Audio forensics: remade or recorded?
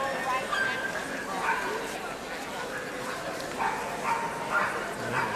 recorded